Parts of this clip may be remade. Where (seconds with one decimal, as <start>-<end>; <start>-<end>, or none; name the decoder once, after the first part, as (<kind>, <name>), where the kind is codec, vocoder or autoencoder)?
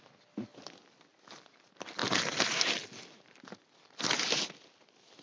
none